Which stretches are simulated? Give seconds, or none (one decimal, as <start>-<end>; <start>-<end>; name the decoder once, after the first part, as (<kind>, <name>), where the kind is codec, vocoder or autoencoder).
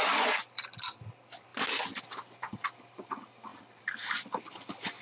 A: 2.5-3.1 (vocoder, BigVGAN v2); 3.5-4.6